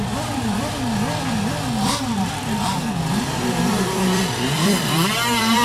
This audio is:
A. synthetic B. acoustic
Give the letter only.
A